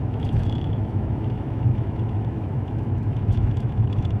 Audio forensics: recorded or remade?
remade